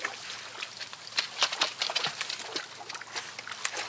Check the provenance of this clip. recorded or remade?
recorded